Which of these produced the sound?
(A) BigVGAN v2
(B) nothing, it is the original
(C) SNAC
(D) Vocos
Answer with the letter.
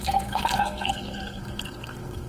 C